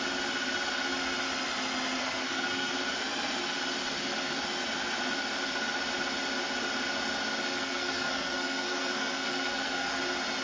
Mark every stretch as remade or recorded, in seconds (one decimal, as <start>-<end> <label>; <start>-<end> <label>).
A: 0.0-2.0 recorded; 2.0-2.7 remade; 2.7-7.5 recorded; 7.5-10.0 remade; 10.0-10.4 recorded